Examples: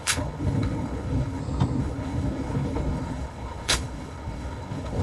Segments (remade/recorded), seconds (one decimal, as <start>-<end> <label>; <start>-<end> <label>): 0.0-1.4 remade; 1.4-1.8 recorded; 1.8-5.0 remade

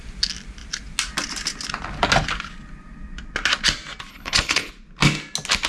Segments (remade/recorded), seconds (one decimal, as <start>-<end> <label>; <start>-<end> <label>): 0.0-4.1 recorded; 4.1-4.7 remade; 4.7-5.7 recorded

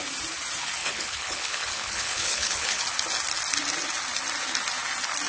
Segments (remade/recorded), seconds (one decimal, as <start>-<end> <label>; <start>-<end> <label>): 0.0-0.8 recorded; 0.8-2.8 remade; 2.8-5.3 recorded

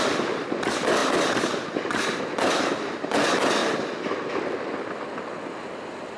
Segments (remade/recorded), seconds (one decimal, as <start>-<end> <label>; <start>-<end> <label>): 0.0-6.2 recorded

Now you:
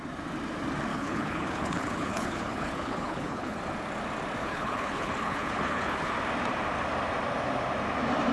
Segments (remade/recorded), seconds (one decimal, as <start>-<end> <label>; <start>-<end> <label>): 0.0-0.9 recorded; 0.9-3.6 remade; 3.6-4.4 recorded; 4.4-6.1 remade; 6.1-8.3 recorded

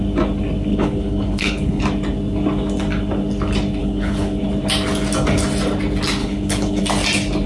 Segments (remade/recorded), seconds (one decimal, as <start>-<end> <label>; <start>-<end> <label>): 0.0-0.7 recorded; 0.7-1.8 remade; 1.8-3.8 recorded; 3.8-4.4 remade; 4.4-6.2 recorded; 6.2-6.8 remade; 6.8-7.5 recorded

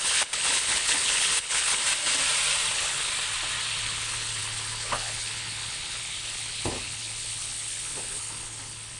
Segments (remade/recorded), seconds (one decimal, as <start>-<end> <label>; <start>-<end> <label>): 0.0-1.8 remade; 1.8-2.7 recorded; 2.7-3.1 remade; 3.1-3.8 recorded; 3.8-9.0 remade